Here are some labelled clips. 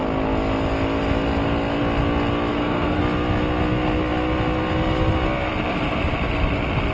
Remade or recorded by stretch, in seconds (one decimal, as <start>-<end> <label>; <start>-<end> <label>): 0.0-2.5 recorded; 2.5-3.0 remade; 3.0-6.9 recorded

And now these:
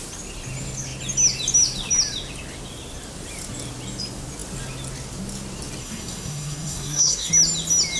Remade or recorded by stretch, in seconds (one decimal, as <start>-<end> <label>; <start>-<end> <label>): 0.0-5.8 recorded; 5.8-7.3 remade; 7.3-8.0 recorded

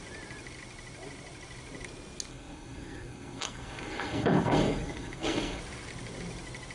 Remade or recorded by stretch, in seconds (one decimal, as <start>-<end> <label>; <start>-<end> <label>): 0.0-2.3 recorded; 2.3-5.6 remade; 5.6-6.7 recorded

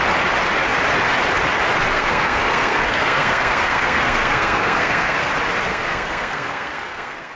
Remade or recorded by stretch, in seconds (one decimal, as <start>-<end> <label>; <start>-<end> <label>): 0.0-1.9 recorded; 1.9-5.3 remade; 5.3-5.7 recorded; 5.7-7.3 remade

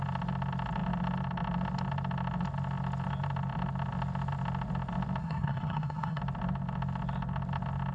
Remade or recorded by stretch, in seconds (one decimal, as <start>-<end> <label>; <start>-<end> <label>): 0.0-5.2 recorded; 5.2-6.2 remade; 6.2-7.9 recorded